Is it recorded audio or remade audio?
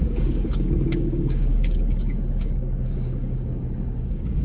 remade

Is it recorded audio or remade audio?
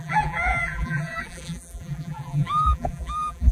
remade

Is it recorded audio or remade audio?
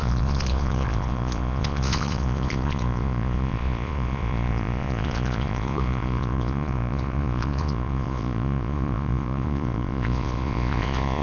remade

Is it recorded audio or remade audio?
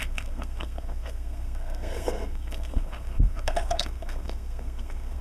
remade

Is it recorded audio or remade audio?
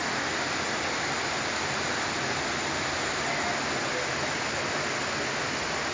recorded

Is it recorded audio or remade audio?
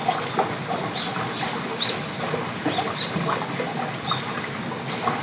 recorded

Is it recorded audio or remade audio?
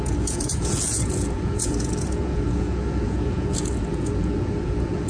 remade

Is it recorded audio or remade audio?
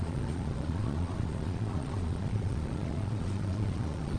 remade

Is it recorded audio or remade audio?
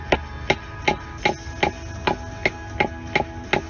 recorded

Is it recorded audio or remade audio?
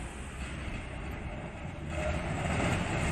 recorded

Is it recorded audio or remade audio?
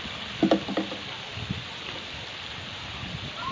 recorded